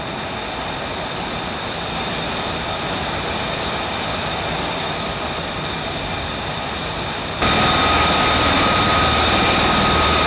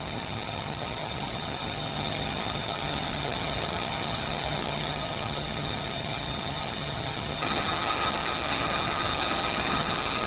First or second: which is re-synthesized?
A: second